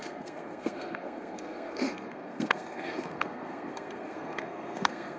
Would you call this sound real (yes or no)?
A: no